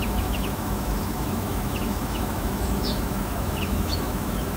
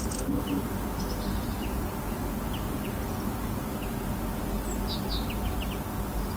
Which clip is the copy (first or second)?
first